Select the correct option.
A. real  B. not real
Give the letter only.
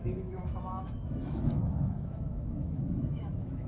B